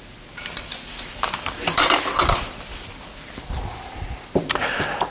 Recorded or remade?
remade